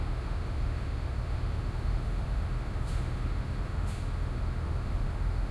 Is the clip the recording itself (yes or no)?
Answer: no